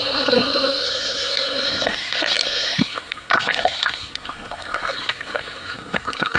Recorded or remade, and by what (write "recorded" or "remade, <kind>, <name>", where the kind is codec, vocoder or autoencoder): remade, codec, SNAC